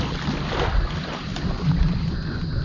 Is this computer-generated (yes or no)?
no